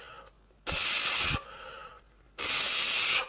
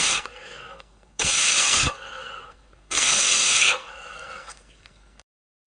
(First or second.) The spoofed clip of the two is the second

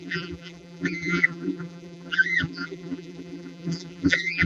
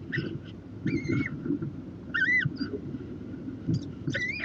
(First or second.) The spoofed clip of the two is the first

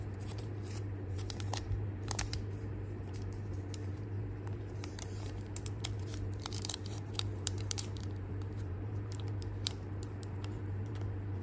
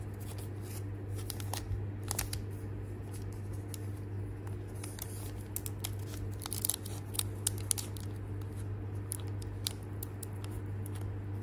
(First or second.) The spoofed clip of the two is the first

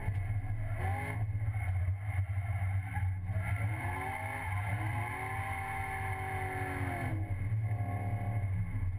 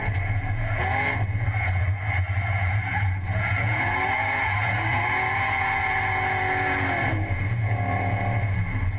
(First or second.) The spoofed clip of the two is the second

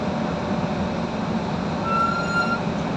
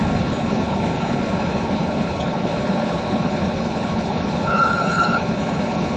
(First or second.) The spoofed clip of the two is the second